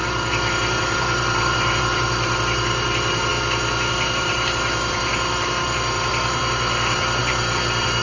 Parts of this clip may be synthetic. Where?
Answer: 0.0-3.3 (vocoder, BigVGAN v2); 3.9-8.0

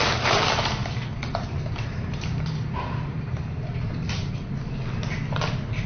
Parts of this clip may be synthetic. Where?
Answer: 0.8-4.3 (vocoder, BigVGAN v2)

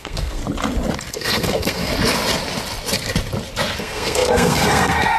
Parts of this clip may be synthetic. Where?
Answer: 0.0-0.4 (codec, SNAC); 1.1-1.9; 3.8-5.2

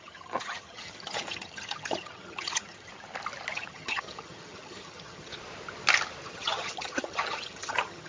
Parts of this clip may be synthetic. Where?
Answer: 0.0-2.9 (vocoder, HiFi-GAN); 3.5-5.3; 6.3-8.1

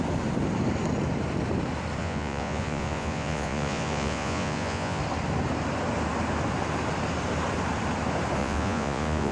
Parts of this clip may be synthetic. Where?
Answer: 2.0-5.0 (vocoder, Vocos); 8.4-9.3

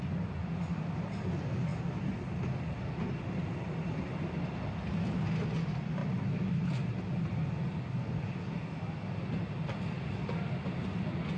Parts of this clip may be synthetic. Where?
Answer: none